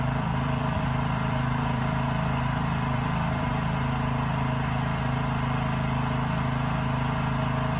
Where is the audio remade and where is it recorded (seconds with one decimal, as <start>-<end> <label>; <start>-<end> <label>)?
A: 0.0-3.5 remade; 3.5-7.8 recorded